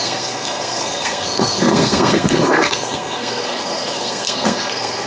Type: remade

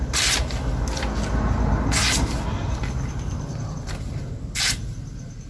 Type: recorded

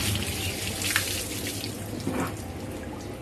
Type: recorded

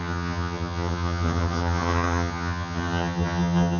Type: remade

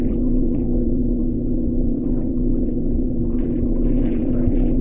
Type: remade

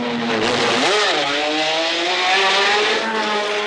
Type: recorded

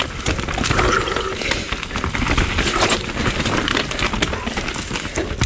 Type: recorded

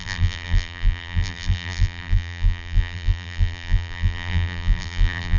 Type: remade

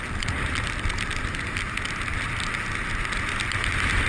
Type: recorded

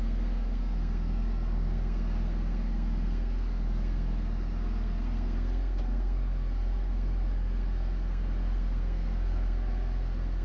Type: remade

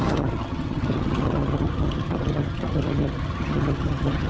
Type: remade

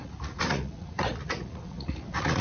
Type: remade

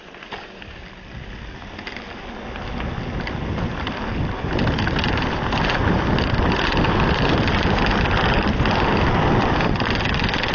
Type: recorded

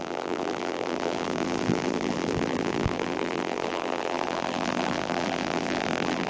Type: remade